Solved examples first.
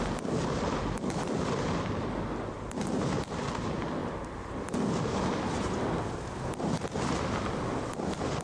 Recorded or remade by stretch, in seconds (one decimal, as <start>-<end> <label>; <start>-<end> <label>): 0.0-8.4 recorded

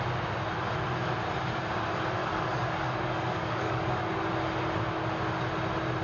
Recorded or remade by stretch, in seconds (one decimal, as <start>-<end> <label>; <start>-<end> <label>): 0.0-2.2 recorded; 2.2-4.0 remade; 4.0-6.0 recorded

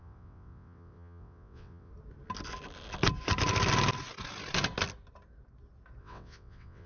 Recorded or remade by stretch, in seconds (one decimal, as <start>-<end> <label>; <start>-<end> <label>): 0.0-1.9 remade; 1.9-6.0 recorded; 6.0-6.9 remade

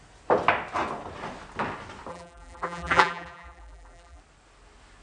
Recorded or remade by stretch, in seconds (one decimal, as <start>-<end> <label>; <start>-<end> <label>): 0.0-2.1 recorded; 2.1-4.2 remade; 4.2-5.0 recorded